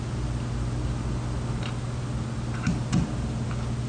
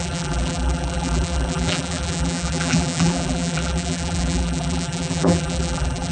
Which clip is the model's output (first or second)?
second